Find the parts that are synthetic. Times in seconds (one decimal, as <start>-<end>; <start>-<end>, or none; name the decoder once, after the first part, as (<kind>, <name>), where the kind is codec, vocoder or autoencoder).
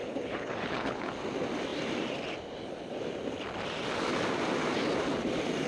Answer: 0.0-1.1 (codec, HILCodec)